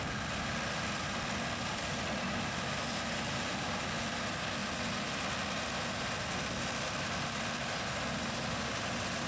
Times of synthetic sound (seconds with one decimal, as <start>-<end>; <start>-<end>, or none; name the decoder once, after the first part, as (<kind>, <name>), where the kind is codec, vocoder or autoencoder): none